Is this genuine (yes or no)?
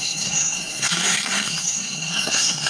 no